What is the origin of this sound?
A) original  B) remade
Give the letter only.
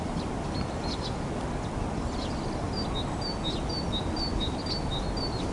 A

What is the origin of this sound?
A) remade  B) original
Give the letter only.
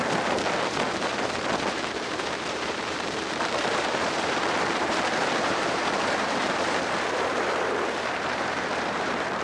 A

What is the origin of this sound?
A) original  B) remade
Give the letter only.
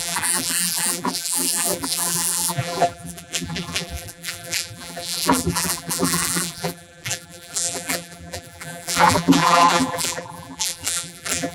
B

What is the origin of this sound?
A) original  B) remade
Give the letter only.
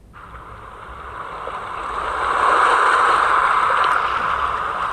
A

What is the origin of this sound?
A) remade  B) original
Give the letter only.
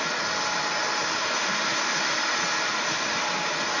B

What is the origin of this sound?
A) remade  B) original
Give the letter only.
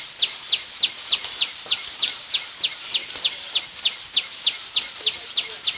B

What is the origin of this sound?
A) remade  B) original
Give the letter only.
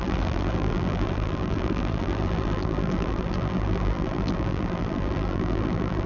A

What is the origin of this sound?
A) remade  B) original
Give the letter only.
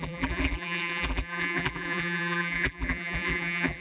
A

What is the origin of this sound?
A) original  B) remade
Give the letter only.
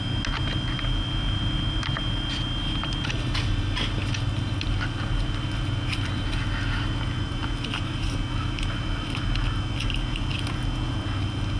A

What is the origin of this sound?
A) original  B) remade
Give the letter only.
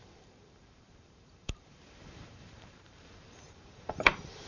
B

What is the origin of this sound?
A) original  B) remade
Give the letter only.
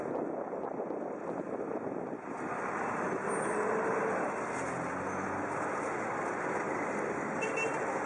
A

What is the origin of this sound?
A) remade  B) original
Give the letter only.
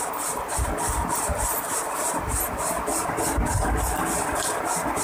B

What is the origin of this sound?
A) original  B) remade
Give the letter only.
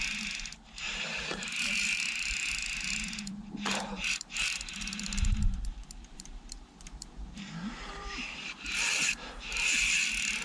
B